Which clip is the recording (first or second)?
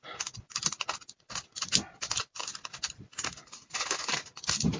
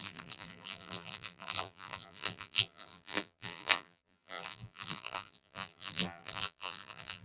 first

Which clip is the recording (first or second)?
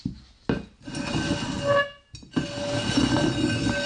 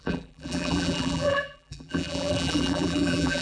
first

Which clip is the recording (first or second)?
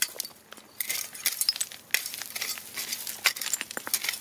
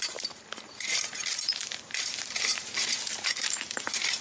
first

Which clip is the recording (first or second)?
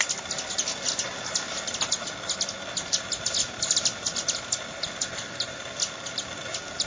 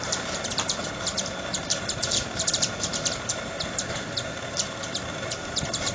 first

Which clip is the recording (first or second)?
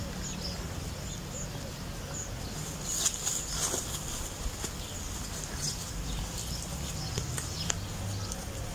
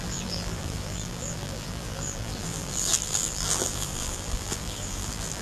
first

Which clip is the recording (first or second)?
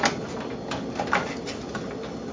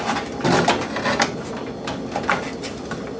second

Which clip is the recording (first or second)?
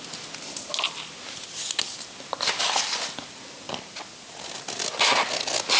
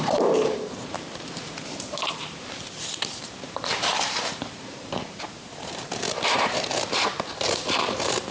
first